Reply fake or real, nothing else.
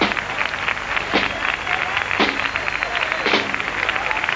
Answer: real